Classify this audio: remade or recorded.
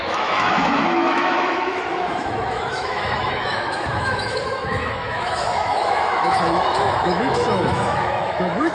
remade